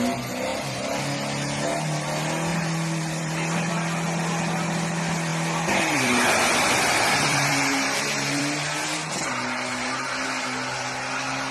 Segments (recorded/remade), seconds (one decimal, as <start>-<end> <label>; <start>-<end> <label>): 0.0-0.5 recorded; 0.5-1.0 remade; 1.0-2.5 recorded; 2.5-3.7 remade; 3.7-5.3 recorded; 5.3-8.4 remade; 8.4-11.5 recorded